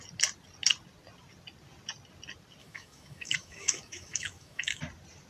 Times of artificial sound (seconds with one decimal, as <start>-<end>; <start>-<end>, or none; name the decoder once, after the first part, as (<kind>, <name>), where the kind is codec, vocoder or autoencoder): 2.6-4.8 (autoencoder, DAC-VAE)